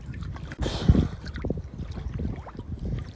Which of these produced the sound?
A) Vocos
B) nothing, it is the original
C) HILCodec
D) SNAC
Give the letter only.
B